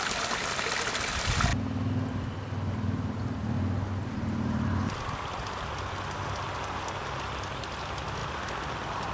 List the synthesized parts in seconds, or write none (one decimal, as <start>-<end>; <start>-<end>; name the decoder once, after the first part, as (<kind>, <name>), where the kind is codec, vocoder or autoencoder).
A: none